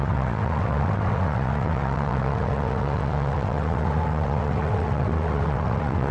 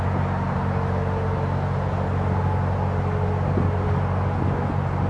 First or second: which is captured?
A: second